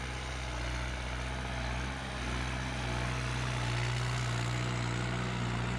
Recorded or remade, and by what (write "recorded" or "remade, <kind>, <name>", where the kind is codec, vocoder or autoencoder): recorded